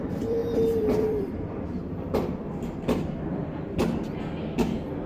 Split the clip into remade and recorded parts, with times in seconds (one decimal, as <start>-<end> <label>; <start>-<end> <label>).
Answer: 0.0-3.8 remade; 3.8-5.1 recorded